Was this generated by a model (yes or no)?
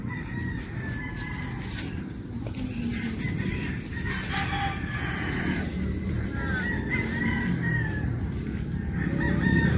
no